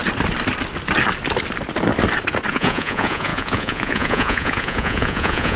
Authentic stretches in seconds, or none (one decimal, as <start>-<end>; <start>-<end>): 0.0-2.5